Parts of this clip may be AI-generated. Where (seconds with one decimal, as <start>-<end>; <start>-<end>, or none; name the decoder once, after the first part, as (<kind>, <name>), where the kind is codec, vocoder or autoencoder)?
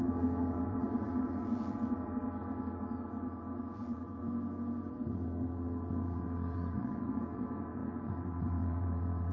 0.0-4.2 (vocoder, WaveNeXt); 4.9-9.3